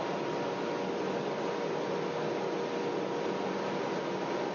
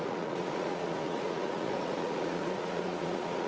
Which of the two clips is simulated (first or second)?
second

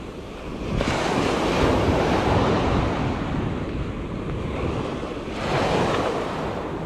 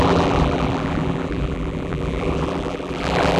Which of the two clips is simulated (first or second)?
second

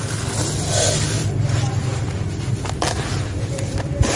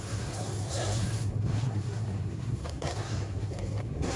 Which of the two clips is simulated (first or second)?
second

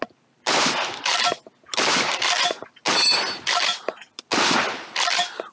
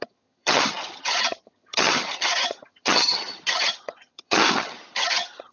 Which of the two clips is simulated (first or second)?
second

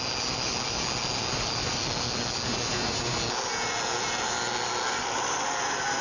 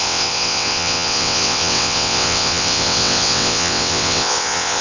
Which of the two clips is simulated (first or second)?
second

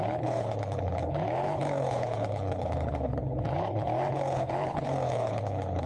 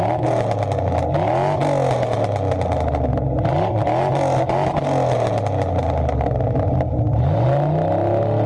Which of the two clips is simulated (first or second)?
first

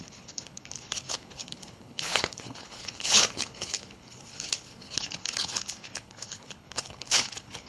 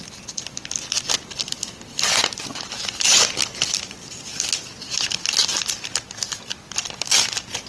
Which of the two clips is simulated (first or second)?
first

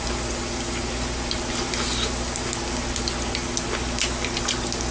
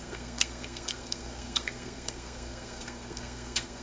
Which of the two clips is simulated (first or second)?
second